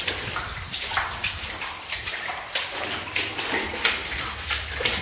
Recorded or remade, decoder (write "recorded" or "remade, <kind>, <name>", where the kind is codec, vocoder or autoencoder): remade, vocoder, BigVGAN v2